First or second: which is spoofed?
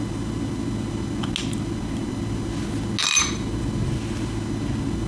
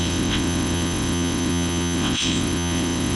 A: second